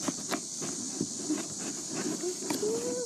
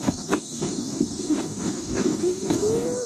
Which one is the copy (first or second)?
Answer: second